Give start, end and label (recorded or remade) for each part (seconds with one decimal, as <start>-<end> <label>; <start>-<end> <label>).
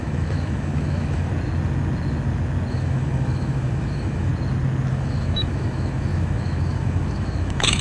0.0-1.3 remade; 1.3-2.7 recorded; 2.7-4.3 remade; 4.3-4.9 recorded; 4.9-7.8 remade